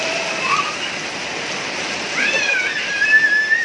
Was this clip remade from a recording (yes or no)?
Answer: no